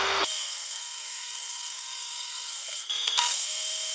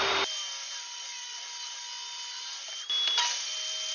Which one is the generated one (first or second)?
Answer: first